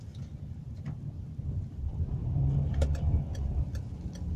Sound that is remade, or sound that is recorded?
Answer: remade